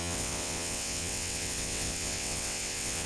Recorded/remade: remade